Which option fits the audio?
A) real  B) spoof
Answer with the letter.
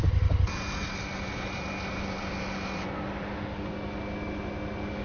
A